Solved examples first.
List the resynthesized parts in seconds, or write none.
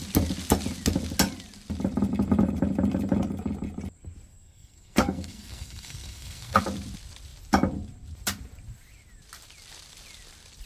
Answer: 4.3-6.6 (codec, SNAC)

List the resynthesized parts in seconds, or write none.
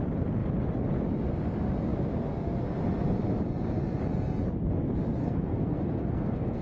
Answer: 5.2-6.6 (codec, SNAC)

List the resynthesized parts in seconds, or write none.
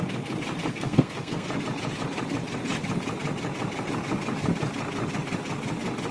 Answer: 0.7-1.5 (codec, SNAC)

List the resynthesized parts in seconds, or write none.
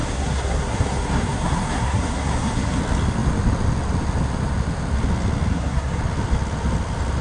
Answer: 0.0-2.8 (codec, SNAC); 5.5-6.0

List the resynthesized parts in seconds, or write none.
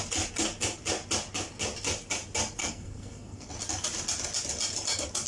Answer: 2.6-3.5 (codec, SNAC)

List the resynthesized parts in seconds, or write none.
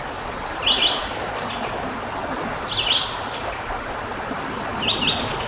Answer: none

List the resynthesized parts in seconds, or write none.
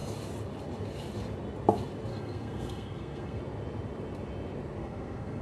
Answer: 2.1-3.4 (codec, SNAC); 4.8-5.4